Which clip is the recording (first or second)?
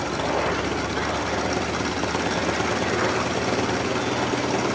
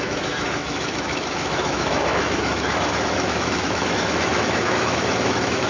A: first